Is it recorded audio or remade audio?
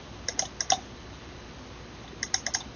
recorded